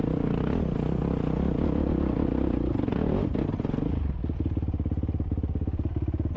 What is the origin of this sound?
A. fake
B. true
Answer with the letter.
B